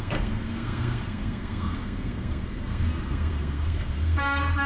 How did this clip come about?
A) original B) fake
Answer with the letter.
B